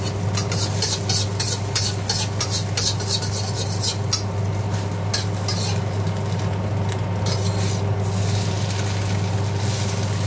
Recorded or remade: recorded